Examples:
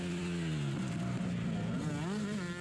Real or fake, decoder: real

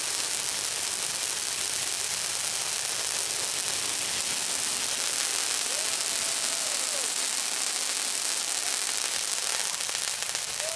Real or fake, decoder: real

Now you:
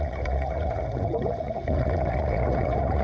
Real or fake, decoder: fake, vocoder, Vocos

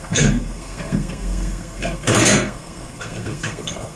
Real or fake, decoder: fake, codec, SNAC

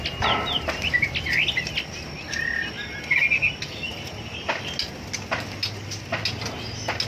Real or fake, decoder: real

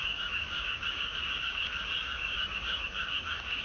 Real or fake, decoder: fake, codec, DAC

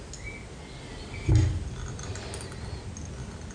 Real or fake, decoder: real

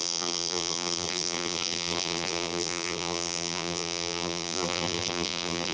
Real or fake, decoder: fake, vocoder, BigVGAN v2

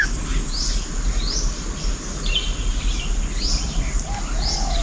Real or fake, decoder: real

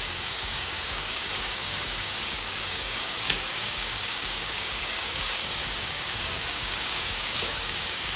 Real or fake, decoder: fake, codec, DAC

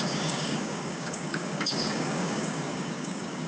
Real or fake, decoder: fake, codec, DAC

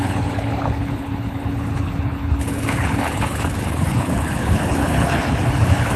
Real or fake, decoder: fake, codec, HILCodec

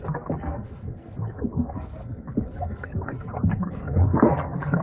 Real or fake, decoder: fake, codec, SNAC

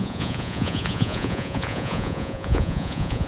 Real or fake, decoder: fake, vocoder, Vocos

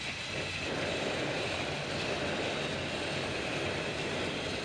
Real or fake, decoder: real